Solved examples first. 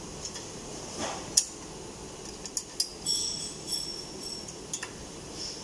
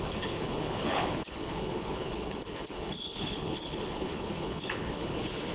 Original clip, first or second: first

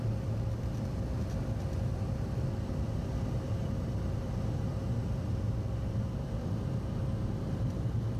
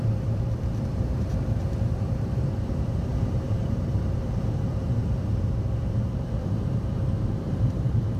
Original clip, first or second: first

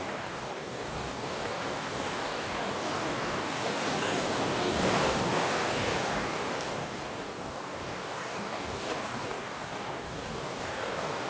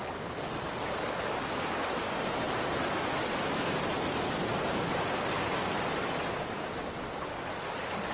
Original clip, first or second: second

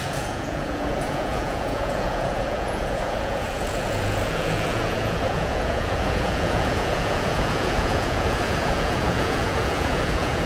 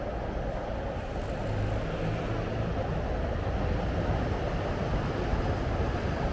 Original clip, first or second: second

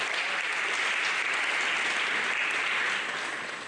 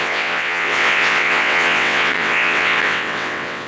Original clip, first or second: first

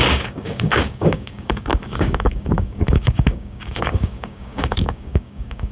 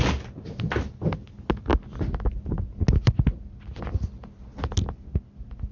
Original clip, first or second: second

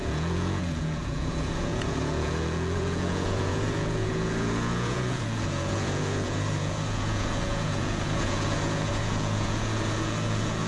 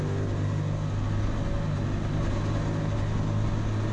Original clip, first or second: second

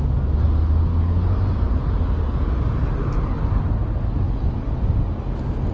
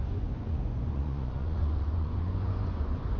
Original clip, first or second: first